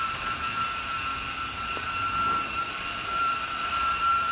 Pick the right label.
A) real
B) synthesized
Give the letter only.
B